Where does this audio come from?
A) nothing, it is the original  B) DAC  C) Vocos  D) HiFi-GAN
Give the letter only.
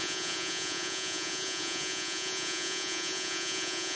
C